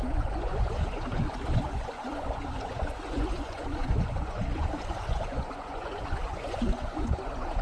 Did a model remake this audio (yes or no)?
yes